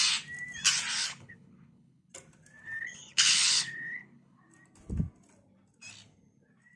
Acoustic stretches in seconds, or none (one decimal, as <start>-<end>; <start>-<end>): 0.0-1.0; 2.1-2.6; 4.5-6.8